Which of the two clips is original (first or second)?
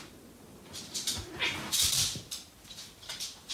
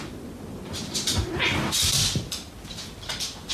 second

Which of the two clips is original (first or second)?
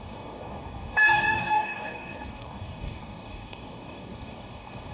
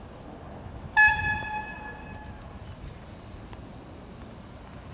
second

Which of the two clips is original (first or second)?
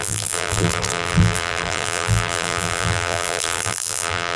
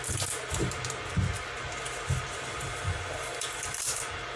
second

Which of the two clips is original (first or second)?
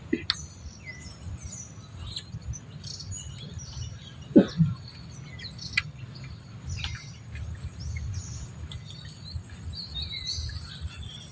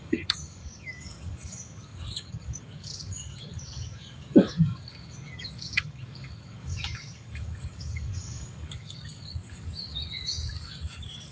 first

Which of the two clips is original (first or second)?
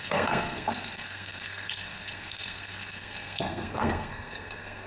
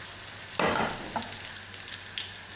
second